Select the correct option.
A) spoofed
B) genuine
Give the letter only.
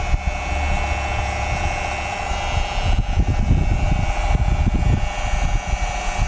B